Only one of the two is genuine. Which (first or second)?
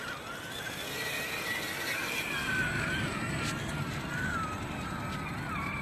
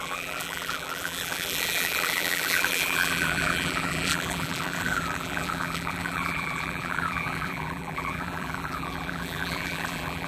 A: first